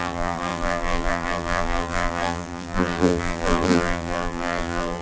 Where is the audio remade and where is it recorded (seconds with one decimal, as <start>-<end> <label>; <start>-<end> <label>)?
0.0-5.0 remade